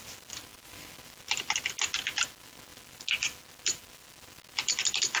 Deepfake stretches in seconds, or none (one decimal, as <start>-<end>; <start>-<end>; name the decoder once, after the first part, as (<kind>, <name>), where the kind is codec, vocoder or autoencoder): none